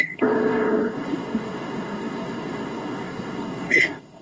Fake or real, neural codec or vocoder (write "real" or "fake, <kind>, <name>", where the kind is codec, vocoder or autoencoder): fake, codec, SNAC